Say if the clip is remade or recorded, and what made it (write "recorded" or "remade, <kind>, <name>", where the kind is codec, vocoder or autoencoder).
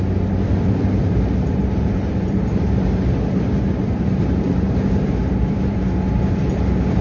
remade, vocoder, BigVGAN v2